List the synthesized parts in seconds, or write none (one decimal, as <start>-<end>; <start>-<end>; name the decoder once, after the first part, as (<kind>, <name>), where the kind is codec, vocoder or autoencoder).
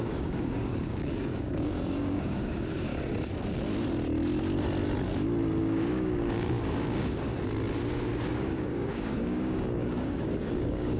0.0-2.9 (codec, DAC); 5.6-7.3; 8.3-11.0